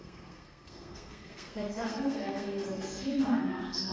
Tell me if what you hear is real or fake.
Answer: fake